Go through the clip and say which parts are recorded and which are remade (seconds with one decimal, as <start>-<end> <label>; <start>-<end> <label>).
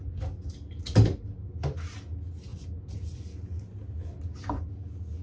0.0-5.2 recorded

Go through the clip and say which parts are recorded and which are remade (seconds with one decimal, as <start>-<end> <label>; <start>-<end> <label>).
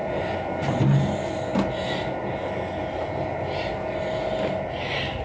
0.0-5.2 recorded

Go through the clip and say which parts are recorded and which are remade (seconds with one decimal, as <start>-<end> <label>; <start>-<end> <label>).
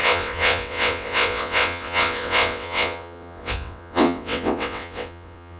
0.0-5.6 remade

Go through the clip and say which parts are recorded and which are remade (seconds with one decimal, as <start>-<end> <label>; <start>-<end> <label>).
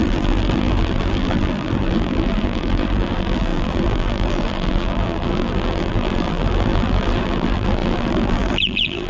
0.0-9.1 remade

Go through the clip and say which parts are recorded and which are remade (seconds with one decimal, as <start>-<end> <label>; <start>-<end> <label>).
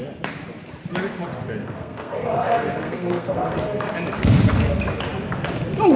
0.0-1.6 recorded; 1.6-3.9 remade; 3.9-6.0 recorded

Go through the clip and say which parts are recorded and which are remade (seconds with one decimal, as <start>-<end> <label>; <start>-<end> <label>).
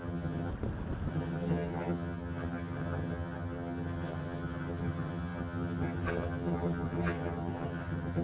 0.0-0.5 remade; 0.5-1.1 recorded; 1.1-8.2 remade